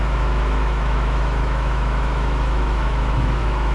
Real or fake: fake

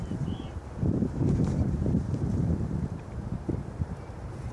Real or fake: fake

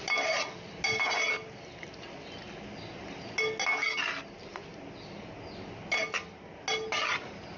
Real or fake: real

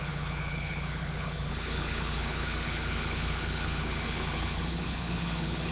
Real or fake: fake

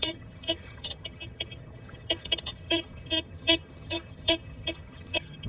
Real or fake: fake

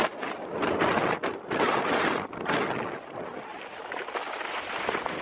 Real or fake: fake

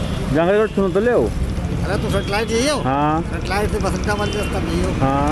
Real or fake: real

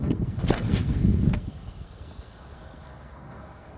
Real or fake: fake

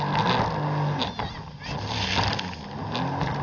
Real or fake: real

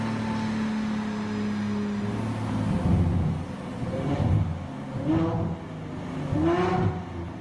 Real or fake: real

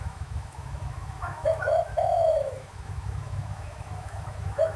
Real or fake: fake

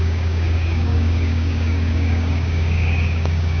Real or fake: fake